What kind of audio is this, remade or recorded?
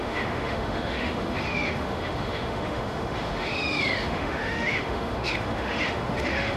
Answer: remade